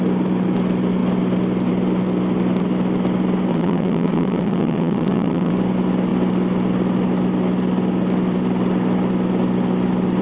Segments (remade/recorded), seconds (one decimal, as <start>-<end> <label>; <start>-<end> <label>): 0.0-3.5 recorded; 3.5-5.5 remade; 5.5-10.2 recorded